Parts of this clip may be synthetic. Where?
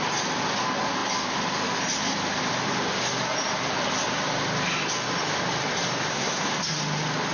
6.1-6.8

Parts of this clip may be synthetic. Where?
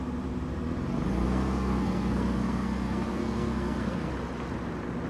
1.2-4.1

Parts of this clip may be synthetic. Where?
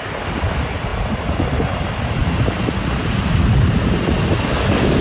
none